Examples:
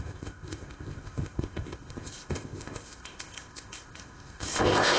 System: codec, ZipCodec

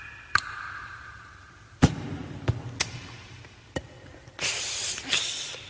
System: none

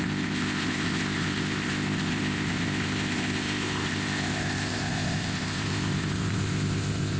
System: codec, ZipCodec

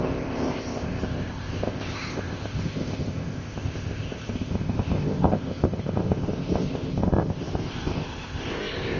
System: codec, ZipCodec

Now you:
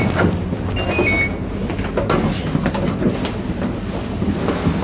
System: none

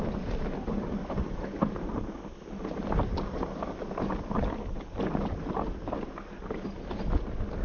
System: none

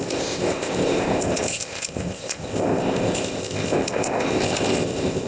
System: codec, ZipCodec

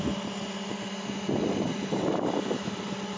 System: none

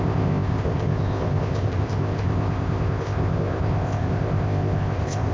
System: codec, ZipCodec